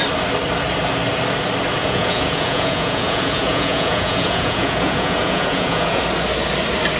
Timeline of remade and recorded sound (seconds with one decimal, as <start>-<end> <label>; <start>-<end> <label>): 0.0-1.8 recorded; 1.8-6.0 remade; 6.0-7.0 recorded